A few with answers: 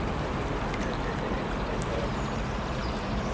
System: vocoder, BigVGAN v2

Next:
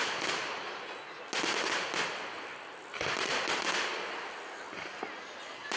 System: none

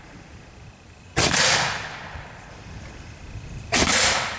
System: vocoder, BigVGAN v2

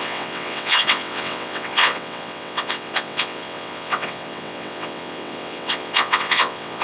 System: vocoder, WaveNeXt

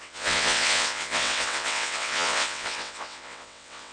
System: vocoder, WaveNeXt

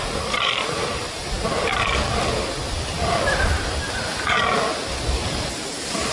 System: none